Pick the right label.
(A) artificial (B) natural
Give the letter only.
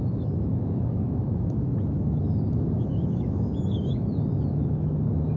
A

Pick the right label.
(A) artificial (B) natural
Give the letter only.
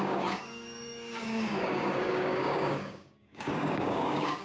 A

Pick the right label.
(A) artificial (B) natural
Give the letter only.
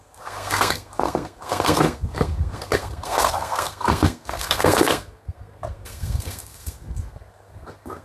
A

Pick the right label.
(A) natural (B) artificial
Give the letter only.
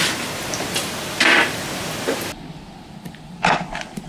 B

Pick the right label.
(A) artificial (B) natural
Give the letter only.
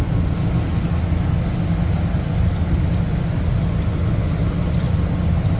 B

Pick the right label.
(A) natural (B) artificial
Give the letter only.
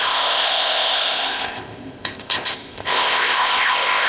B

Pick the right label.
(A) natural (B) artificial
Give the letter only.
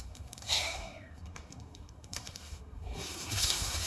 B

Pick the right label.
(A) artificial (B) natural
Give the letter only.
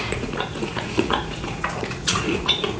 A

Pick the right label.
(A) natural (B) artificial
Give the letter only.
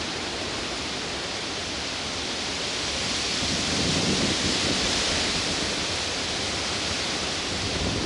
B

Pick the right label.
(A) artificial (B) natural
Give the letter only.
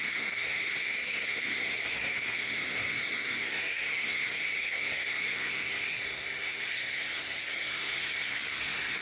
A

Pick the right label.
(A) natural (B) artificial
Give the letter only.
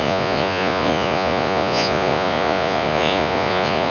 B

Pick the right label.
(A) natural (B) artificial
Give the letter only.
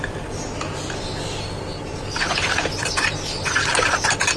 A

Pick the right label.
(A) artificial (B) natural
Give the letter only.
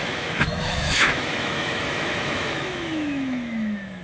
A